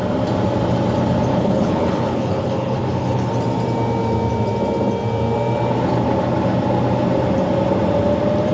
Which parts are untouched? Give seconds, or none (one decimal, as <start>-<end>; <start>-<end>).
0.0-1.3; 3.3-8.5